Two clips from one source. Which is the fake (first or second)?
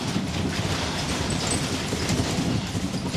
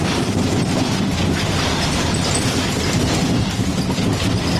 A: first